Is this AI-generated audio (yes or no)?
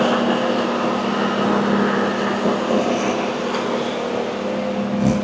no